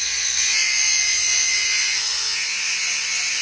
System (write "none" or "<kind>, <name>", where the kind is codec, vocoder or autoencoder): vocoder, Vocos